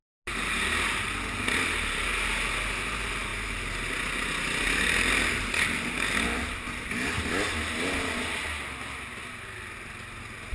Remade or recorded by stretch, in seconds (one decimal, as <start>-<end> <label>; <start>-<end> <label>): 0.0-10.5 recorded